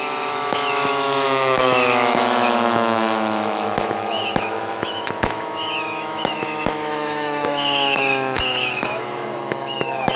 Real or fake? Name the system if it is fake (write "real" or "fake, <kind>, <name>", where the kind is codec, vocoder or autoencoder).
fake, autoencoder, DAC-VAE